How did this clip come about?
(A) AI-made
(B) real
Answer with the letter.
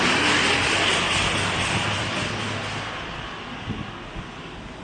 B